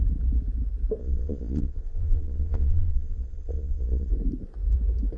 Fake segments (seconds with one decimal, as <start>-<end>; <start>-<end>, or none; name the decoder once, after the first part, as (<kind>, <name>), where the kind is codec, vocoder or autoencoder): 1.0-4.1 (vocoder, Vocos)